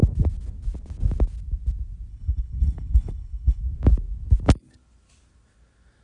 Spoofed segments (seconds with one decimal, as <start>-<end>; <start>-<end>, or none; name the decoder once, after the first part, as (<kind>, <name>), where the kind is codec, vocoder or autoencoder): 2.1-3.6 (codec, HILCodec)

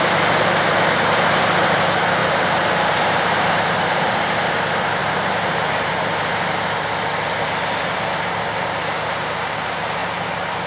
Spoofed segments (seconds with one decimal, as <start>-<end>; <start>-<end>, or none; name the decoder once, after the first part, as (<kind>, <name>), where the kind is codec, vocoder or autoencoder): 2.2-4.5 (vocoder, BigVGAN v2); 5.0-5.9

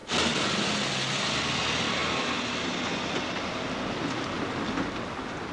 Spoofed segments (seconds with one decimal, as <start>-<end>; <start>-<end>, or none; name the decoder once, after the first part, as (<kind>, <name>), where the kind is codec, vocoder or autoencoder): none